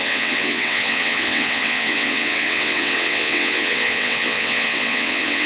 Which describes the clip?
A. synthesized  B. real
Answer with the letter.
A